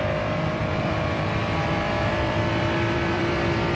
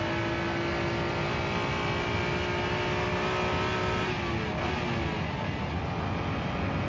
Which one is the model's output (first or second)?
first